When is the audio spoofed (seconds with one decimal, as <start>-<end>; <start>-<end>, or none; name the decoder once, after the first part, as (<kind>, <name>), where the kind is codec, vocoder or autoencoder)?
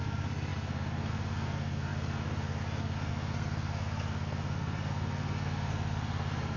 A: 0.0-6.6 (codec, SNAC)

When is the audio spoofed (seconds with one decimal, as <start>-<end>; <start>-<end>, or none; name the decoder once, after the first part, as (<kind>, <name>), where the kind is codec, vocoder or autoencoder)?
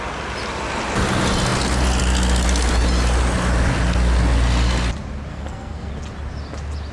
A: 5.3-5.9 (codec, SNAC)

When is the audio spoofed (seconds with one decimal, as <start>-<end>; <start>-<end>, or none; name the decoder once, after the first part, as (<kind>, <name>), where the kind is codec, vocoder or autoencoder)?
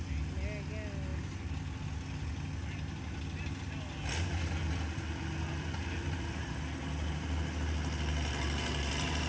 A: none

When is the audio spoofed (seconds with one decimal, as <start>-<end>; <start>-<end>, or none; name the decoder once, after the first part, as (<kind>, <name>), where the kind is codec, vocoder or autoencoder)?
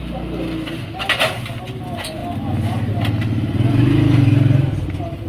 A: none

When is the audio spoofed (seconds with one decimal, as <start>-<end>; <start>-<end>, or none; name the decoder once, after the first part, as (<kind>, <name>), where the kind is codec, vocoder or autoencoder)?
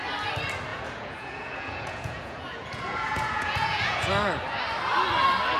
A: 0.7-4.1 (vocoder, Vocos)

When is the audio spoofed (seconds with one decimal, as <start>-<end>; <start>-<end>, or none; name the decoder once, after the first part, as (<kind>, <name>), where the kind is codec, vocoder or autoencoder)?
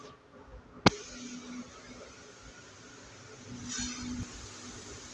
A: none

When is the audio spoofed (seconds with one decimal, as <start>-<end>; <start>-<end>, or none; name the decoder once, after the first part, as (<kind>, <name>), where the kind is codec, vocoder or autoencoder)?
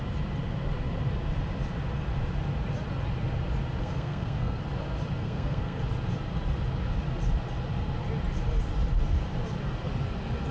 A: 3.8-4.6 (codec, SNAC); 5.2-5.8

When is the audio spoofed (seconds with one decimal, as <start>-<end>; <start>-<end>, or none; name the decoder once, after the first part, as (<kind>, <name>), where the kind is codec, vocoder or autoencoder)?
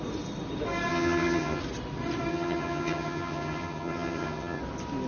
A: 0.9-1.6 (vocoder, HiFi-GAN); 2.3-4.6